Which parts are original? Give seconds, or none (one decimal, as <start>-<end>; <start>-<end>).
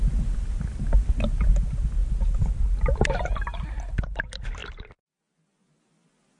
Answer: 0.0-6.4